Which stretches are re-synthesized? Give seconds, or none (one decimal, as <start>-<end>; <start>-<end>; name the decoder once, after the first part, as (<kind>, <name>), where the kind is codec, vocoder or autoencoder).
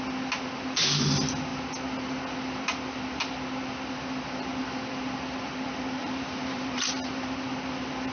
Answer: 6.0-7.2 (vocoder, BigVGAN v2)